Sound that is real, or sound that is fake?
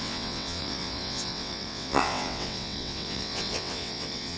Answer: fake